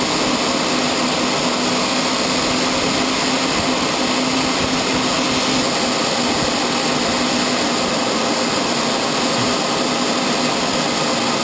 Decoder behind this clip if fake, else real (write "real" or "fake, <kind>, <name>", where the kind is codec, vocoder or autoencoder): real